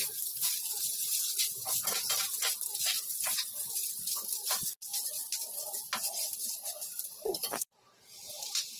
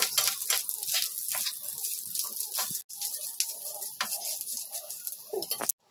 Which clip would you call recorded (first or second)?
second